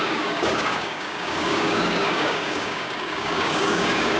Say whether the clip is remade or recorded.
remade